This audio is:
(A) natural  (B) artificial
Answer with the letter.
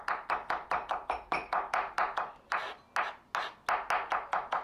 A